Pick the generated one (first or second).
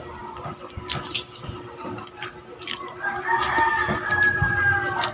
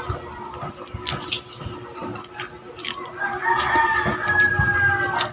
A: first